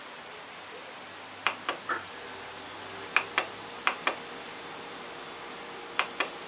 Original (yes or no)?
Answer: yes